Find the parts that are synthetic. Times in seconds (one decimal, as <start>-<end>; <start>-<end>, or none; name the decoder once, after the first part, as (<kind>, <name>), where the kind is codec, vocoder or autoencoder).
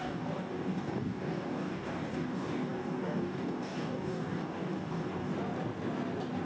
0.0-5.3 (codec, DAC)